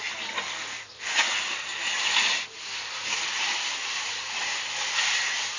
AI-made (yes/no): no